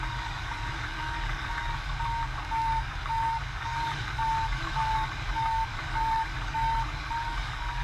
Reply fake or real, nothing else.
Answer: fake